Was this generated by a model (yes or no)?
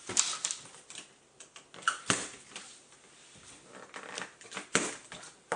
no